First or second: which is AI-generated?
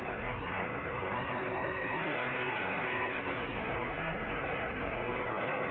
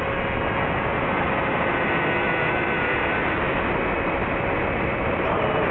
first